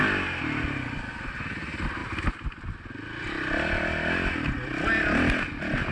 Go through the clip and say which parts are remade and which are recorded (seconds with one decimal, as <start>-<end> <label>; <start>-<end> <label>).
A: 0.0-5.9 recorded